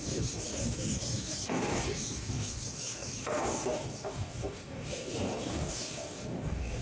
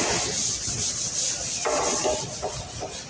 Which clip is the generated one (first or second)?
first